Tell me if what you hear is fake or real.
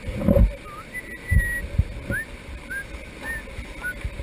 real